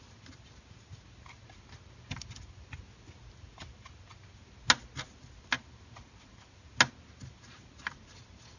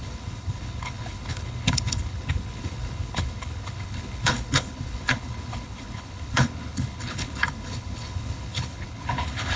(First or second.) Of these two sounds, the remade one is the second